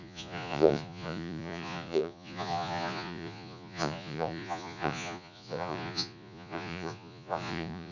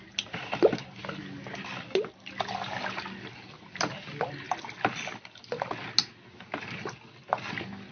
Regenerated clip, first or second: first